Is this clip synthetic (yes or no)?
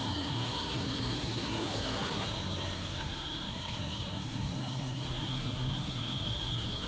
yes